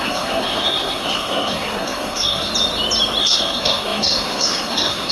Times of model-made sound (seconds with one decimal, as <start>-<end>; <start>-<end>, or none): 0.0-2.5; 3.2-5.1